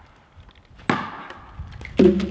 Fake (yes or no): no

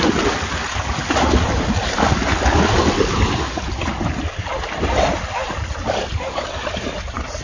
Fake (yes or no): no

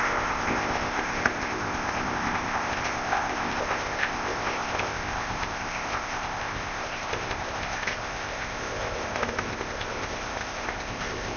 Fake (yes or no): yes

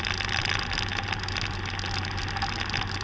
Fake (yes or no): no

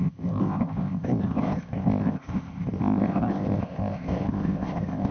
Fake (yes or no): yes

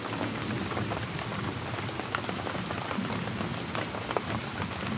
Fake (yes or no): no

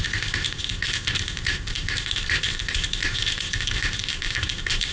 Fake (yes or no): yes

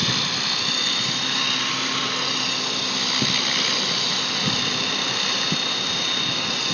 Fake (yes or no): no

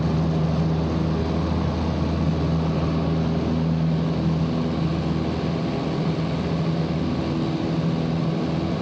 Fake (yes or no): no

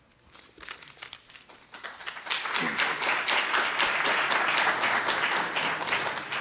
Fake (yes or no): no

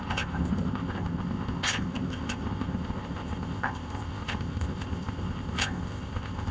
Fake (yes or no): yes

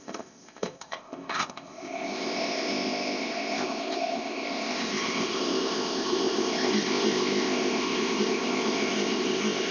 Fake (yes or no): yes